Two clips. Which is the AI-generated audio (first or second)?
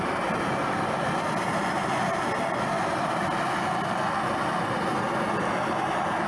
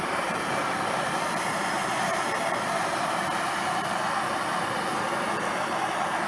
second